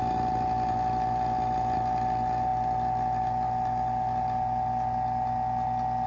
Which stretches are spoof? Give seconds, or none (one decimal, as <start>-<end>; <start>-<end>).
none